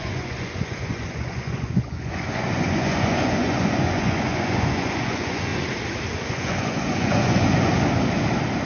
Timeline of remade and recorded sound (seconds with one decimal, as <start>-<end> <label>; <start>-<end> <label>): 0.0-5.5 remade; 5.5-6.3 recorded; 6.3-7.7 remade; 7.7-8.7 recorded

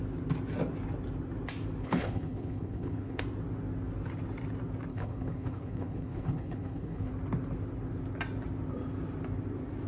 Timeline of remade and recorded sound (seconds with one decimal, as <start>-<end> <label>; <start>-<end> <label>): 0.0-1.8 recorded; 1.8-3.2 remade; 3.2-4.9 recorded; 4.9-7.1 remade; 7.1-9.9 recorded

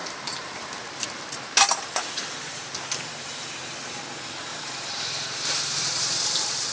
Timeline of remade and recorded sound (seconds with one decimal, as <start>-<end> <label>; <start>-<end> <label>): 0.0-4.0 remade; 4.0-4.5 recorded; 4.5-6.7 remade